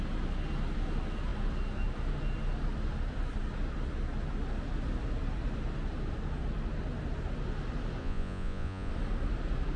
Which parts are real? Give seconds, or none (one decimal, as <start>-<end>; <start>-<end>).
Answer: 0.0-8.0; 8.9-9.8